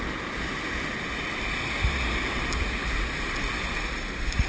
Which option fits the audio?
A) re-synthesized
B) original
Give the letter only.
B